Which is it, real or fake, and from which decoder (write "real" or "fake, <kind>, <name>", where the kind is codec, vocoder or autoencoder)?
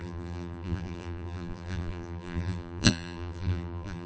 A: fake, vocoder, BigVGAN v2